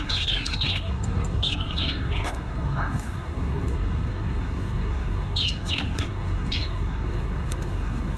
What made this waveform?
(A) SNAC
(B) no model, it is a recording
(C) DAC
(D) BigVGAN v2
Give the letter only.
A